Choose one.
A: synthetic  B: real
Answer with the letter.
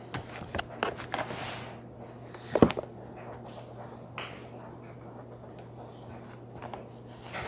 B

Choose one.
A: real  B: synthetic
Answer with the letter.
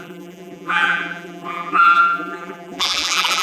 B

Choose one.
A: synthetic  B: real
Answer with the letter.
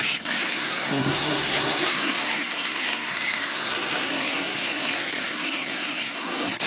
A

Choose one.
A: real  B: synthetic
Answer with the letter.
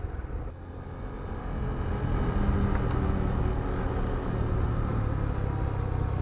A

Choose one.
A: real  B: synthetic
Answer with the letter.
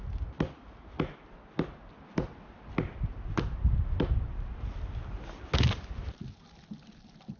A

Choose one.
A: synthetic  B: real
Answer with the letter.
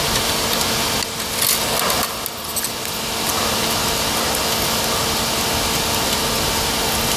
B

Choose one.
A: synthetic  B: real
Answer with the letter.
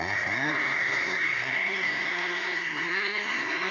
A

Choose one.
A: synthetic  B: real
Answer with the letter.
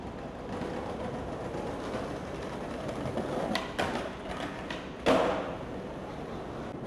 B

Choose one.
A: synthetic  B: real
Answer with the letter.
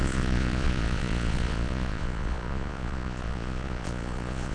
A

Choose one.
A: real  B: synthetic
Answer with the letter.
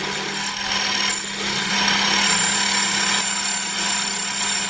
A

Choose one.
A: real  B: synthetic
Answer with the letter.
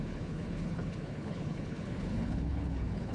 B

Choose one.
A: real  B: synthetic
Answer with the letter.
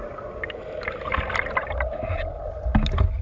A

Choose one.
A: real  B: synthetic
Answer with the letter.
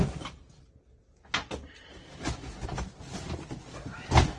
A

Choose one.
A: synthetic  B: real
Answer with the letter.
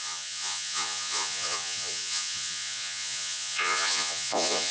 A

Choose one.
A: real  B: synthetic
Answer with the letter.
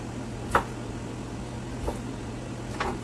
A